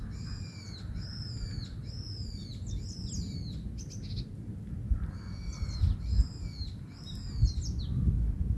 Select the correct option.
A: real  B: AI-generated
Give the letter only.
A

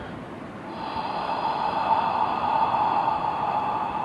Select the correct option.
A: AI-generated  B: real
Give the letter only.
B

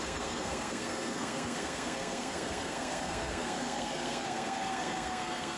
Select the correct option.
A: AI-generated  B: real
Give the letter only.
A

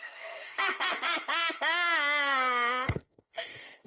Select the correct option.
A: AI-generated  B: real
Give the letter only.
A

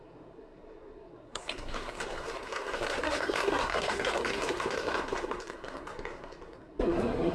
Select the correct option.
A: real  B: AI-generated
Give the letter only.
B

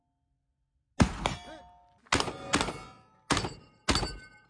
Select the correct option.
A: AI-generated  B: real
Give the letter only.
B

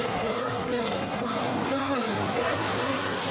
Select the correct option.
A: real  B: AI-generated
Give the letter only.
B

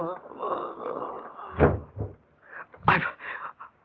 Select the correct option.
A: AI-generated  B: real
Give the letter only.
B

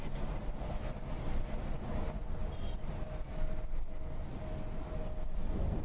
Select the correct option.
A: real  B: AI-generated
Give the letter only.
A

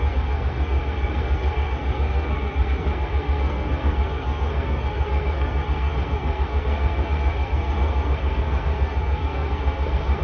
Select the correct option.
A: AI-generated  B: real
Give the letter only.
A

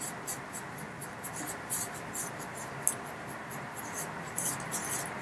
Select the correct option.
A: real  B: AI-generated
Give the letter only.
A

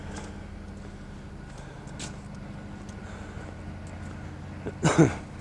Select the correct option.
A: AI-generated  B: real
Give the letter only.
B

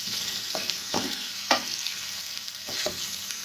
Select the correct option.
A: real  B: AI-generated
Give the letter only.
B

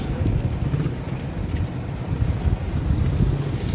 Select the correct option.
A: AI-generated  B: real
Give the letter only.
B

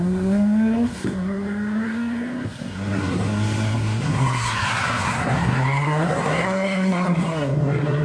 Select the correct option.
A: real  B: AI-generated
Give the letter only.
B